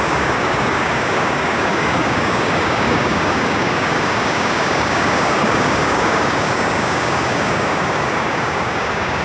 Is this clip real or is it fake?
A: fake